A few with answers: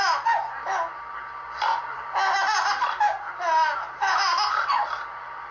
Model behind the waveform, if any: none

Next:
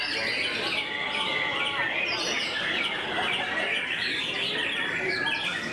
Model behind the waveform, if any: vocoder, BigVGAN v2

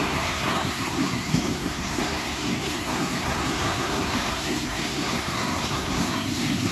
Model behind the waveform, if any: codec, SNAC